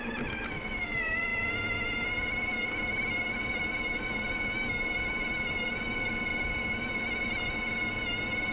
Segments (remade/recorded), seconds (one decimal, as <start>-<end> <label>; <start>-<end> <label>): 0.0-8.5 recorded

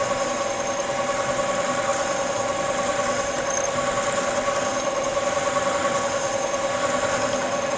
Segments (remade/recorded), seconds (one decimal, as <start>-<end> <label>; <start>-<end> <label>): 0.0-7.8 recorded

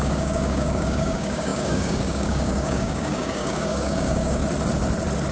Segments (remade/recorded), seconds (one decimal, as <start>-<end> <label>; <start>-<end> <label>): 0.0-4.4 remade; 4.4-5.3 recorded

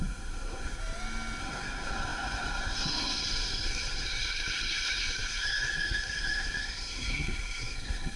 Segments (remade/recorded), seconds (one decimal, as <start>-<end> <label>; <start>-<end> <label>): 0.0-0.8 remade; 0.8-1.4 recorded; 1.4-8.2 remade

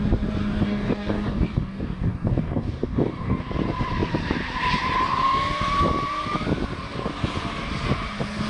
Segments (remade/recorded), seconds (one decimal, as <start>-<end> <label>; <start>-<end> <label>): 0.0-0.4 recorded; 0.4-3.4 remade; 3.4-8.5 recorded